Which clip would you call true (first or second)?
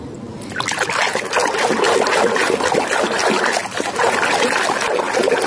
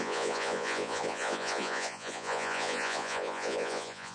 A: first